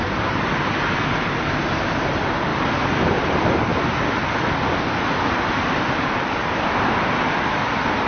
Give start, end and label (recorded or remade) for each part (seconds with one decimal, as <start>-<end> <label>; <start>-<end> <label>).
0.0-8.1 recorded